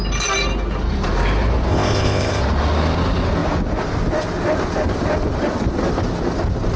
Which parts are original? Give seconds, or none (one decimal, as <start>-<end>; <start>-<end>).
0.0-1.7; 2.4-6.8